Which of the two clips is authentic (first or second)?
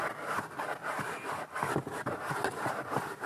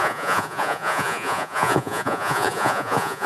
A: first